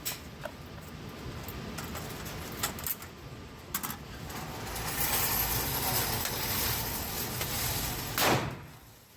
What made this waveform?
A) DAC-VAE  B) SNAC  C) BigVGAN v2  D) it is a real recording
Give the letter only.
D